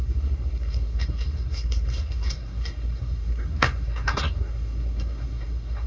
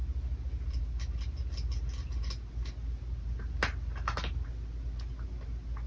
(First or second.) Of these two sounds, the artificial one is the first